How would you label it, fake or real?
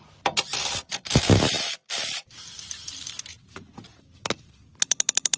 real